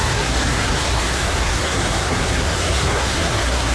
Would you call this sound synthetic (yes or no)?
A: yes